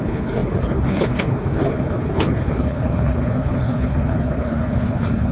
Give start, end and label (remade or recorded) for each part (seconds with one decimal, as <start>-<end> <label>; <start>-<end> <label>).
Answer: 0.0-5.3 remade